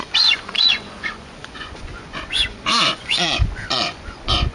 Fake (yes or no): yes